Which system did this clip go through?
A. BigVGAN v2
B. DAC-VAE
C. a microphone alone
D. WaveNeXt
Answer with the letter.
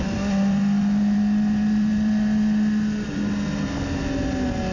C